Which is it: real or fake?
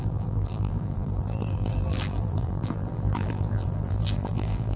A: fake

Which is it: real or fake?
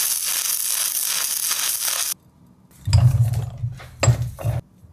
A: real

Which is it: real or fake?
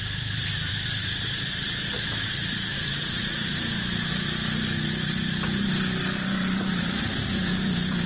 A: fake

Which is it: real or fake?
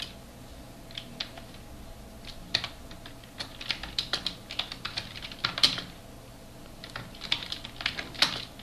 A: real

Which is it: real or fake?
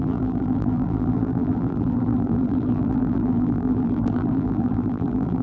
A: fake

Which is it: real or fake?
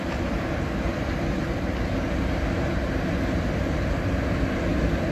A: real